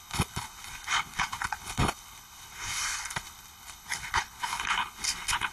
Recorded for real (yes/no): no